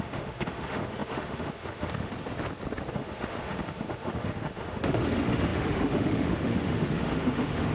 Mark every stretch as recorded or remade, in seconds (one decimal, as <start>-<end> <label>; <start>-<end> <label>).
0.0-2.1 remade; 2.1-2.9 recorded; 2.9-7.7 remade